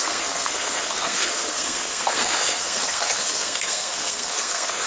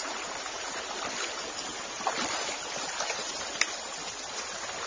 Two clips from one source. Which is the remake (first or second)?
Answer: first